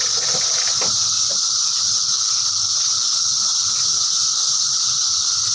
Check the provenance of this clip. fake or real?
real